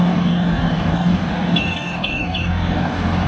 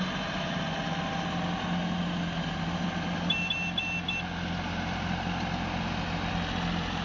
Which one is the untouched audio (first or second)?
second